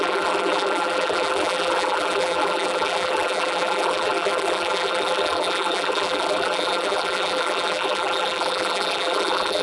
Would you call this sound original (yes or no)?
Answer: no